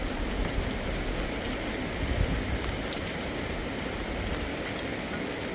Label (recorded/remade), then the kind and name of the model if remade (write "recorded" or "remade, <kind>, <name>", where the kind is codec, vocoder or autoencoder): recorded